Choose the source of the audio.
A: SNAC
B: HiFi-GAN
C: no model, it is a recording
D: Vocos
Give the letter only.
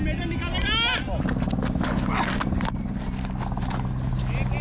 C